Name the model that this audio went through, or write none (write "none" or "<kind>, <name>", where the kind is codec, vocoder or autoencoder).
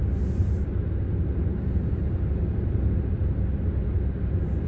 none